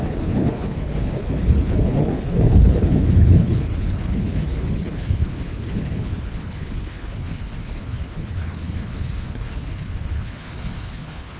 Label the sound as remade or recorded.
remade